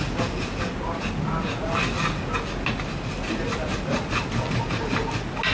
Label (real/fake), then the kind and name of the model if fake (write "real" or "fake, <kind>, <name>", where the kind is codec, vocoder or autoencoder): real